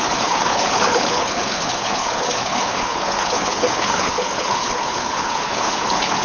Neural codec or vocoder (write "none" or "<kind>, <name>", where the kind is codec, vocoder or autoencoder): codec, HILCodec